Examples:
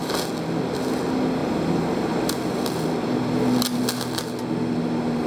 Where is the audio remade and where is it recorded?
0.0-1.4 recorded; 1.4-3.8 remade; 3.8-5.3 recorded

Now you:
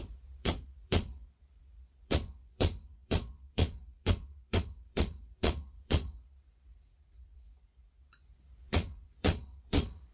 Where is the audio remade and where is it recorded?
0.0-10.1 remade